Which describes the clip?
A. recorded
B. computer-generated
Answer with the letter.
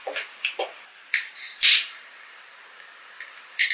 B